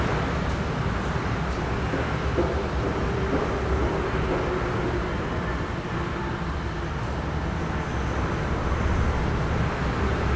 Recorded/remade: recorded